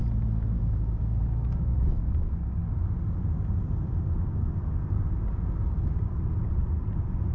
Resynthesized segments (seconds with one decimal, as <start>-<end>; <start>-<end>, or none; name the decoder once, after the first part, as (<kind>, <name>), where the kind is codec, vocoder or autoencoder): 0.6-2.6 (codec, DAC)